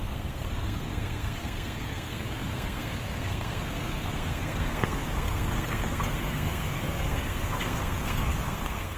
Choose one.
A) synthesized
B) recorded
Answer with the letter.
A